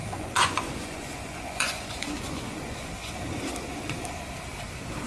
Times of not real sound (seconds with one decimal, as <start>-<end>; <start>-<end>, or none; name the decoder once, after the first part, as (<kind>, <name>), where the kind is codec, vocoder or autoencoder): 0.0-3.1 (vocoder, Vocos)